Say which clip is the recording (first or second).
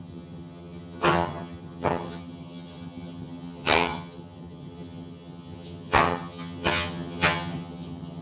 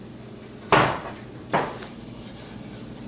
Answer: second